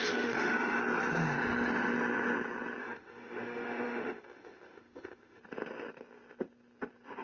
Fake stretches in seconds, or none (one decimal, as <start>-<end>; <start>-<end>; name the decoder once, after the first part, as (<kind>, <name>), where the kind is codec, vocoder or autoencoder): 0.0-0.8 (autoencoder, DAC-VAE); 2.8-5.4